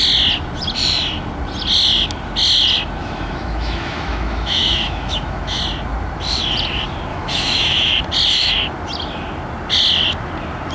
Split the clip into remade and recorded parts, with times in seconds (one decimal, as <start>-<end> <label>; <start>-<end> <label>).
0.0-3.0 recorded; 3.0-5.6 remade; 5.6-7.1 recorded; 7.1-7.9 remade; 7.9-10.7 recorded